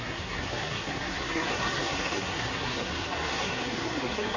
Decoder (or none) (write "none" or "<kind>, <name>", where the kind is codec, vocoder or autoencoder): codec, SNAC